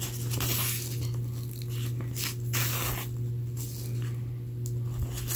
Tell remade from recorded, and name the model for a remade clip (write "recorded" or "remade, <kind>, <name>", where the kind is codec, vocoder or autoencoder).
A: recorded